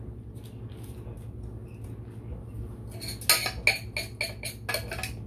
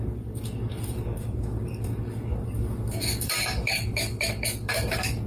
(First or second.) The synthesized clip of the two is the second